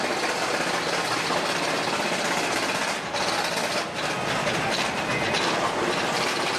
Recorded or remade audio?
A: recorded